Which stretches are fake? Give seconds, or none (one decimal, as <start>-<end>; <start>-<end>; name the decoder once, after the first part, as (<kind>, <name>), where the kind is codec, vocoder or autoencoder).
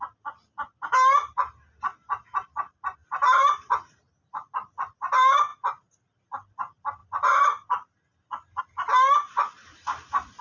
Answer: 3.0-4.0 (vocoder, BigVGAN v2)